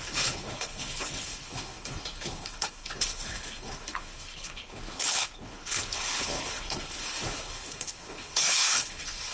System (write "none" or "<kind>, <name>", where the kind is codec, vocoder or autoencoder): codec, HILCodec